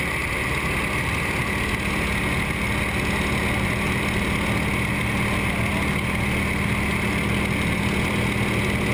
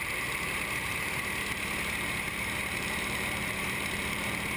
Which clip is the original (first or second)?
first